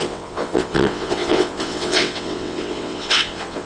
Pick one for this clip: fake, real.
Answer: fake